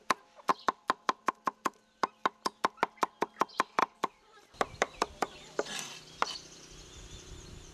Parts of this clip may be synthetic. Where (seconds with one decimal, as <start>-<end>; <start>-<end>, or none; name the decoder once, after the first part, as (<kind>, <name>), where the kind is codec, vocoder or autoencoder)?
0.5-1.3 (vocoder, BigVGAN v2); 3.8-6.6